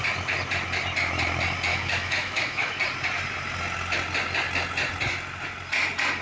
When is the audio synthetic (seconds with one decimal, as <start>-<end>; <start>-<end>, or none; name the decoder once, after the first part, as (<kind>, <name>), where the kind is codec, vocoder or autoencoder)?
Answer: 1.7-2.8 (autoencoder, DAC-VAE)

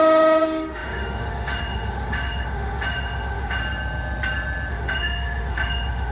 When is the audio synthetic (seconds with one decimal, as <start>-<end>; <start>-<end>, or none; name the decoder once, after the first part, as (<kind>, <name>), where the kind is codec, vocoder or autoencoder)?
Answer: 0.0-3.6 (autoencoder, DAC-VAE); 4.7-6.1